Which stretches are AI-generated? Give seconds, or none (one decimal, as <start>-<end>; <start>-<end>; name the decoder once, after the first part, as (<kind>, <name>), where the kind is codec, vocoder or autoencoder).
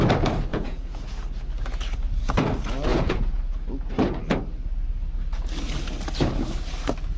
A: 0.5-1.0 (vocoder, Vocos); 2.9-3.4